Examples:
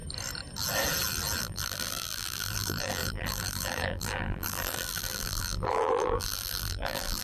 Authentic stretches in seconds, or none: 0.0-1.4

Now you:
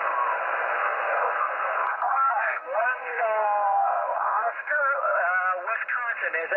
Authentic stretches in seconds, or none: 0.0-0.8; 4.8-6.6

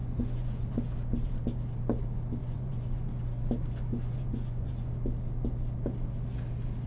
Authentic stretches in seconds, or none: 0.8-2.4; 3.1-3.9; 4.9-6.9

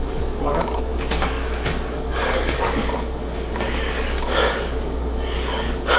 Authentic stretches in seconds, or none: none

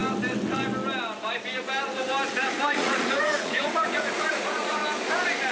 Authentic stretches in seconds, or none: 0.0-2.5; 4.8-5.5

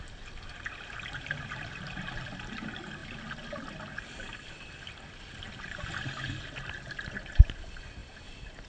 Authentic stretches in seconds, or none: 0.0-8.7

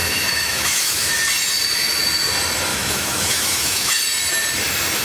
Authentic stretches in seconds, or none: 1.1-2.7; 4.0-5.0

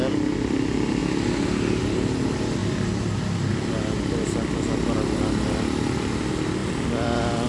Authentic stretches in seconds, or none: 0.0-6.6